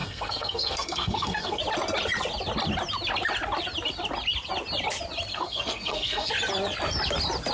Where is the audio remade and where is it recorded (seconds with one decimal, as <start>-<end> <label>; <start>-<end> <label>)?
0.0-1.6 remade; 1.6-5.3 recorded; 5.3-6.3 remade; 6.3-7.5 recorded